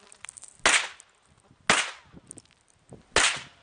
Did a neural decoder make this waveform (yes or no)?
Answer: no